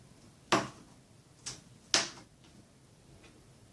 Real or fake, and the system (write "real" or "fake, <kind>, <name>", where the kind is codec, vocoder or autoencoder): real